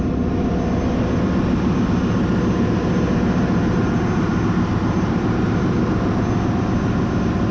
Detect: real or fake real